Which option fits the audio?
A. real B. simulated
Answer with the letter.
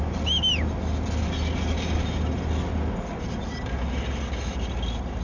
A